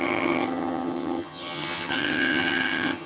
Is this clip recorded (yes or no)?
no